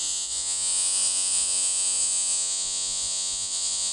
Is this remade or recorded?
remade